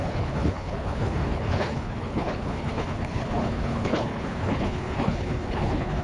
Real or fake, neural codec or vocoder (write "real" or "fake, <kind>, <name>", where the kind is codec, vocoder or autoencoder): fake, codec, HILCodec